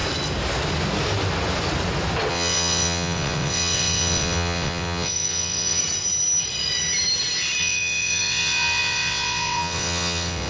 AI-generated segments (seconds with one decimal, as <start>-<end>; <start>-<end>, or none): 2.3-5.8; 7.6-10.5